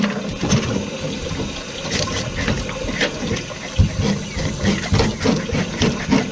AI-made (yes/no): no